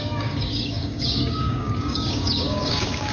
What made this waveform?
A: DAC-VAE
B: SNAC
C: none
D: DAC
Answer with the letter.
D